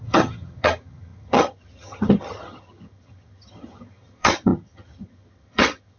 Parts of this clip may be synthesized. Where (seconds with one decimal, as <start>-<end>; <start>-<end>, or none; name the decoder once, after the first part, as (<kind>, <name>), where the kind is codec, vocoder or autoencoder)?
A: 0.0-6.0 (vocoder, HiFi-GAN)